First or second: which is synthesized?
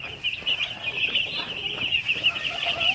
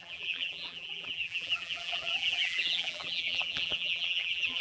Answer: second